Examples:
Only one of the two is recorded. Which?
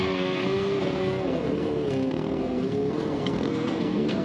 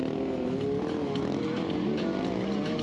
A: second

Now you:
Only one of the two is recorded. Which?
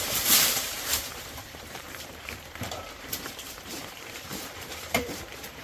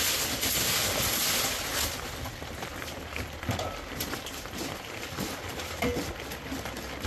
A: second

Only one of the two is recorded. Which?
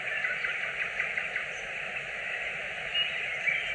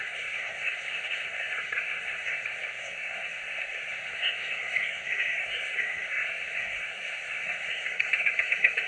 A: first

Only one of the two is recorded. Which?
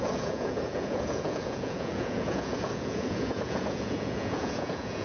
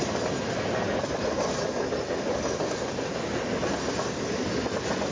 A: second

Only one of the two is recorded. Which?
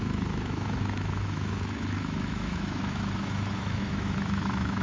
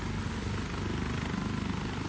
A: second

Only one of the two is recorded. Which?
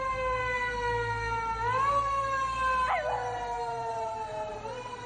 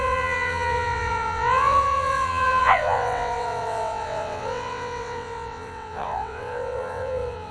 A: first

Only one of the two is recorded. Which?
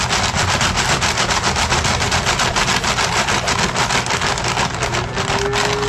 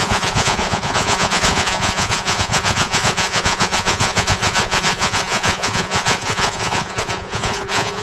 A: first